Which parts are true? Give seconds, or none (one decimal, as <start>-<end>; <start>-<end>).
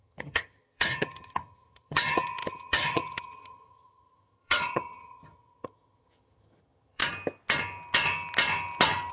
7.0-9.1